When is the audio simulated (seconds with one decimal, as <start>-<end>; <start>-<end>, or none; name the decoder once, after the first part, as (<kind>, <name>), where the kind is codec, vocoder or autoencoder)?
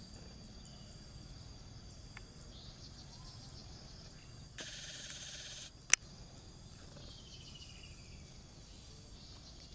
none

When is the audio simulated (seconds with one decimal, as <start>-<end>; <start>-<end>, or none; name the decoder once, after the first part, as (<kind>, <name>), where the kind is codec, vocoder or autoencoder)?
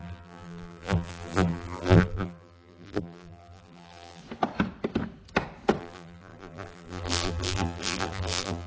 0.0-4.2 (vocoder, BigVGAN v2); 5.8-8.7